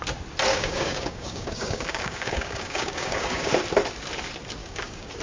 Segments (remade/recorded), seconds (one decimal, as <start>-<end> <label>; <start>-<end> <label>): 0.0-0.5 recorded; 0.5-3.5 remade; 3.5-4.6 recorded; 4.6-5.2 remade